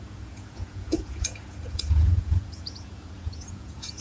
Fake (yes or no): yes